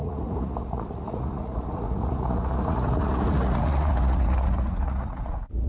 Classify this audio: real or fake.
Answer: fake